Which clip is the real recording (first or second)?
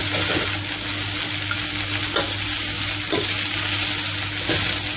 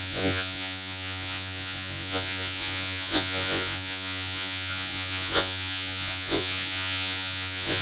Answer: first